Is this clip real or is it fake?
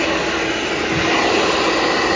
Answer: real